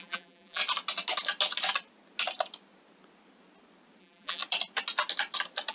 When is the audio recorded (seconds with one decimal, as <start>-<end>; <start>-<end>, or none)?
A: 0.6-4.0; 4.4-5.7